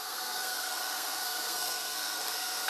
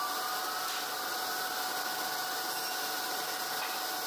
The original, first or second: second